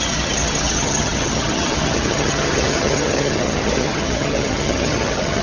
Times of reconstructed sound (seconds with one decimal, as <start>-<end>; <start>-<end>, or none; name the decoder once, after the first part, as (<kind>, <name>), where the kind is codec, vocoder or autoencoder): 0.0-5.4 (vocoder, HiFi-GAN)